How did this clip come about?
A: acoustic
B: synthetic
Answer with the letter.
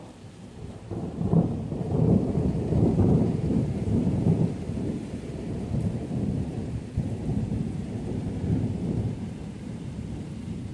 B